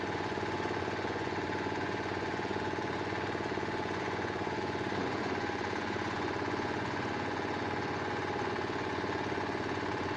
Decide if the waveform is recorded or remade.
remade